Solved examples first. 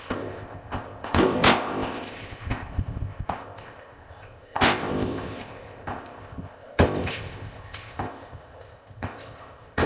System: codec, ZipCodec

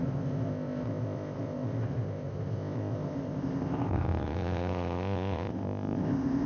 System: codec, ZipCodec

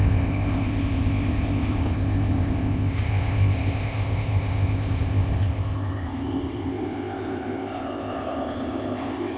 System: codec, ZipCodec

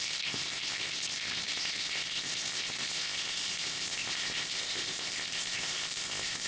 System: codec, ZipCodec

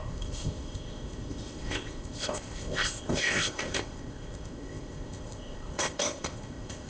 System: codec, ZipCodec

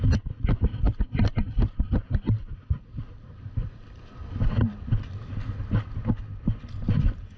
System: none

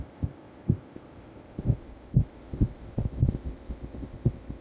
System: codec, ZipCodec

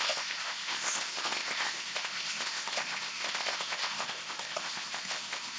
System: codec, ZipCodec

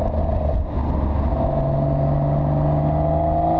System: none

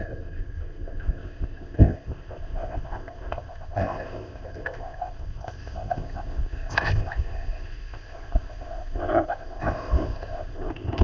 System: codec, ZipCodec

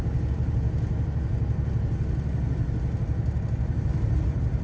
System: none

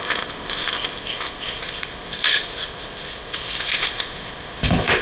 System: codec, ZipCodec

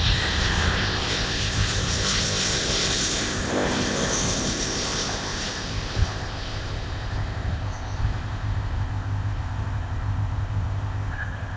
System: codec, ZipCodec